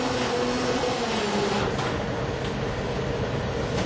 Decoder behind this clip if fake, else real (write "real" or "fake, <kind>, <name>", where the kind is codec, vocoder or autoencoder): real